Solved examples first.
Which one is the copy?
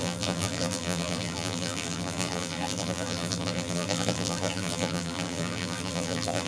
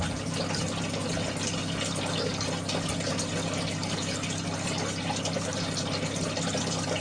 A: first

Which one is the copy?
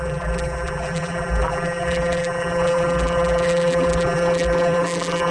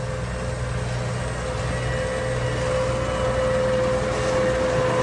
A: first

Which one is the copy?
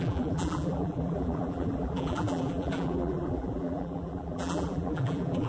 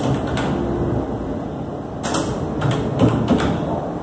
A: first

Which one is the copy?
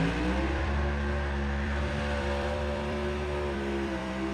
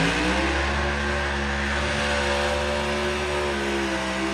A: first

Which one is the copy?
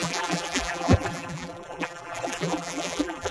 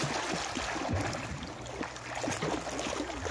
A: first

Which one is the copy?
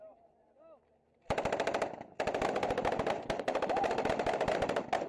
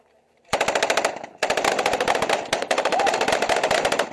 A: second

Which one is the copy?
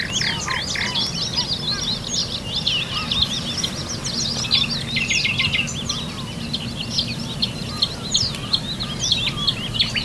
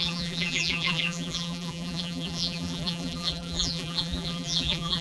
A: second